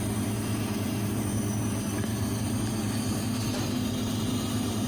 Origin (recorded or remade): recorded